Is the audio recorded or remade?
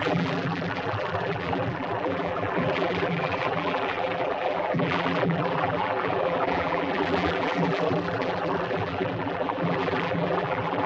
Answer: remade